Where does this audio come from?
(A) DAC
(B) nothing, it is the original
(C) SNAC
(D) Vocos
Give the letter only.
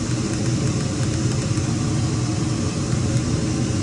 B